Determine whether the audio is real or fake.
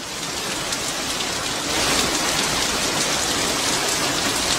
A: real